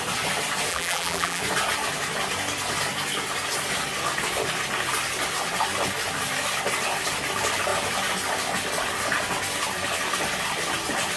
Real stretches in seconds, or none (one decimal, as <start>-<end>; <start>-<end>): 0.0-0.7; 1.4-11.2